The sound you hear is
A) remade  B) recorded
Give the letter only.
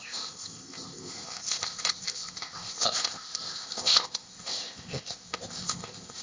A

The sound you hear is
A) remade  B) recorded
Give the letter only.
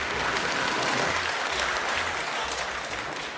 B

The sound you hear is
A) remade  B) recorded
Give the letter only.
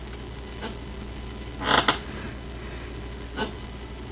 B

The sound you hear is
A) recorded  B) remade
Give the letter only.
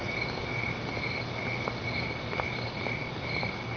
A